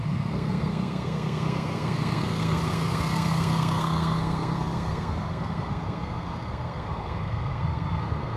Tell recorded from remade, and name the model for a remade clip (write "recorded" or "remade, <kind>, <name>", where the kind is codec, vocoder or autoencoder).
remade, codec, SNAC